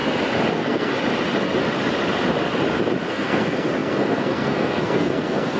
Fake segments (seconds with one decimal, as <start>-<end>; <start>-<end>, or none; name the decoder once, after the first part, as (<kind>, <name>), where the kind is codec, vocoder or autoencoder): 0.5-0.9 (codec, SNAC); 3.1-5.6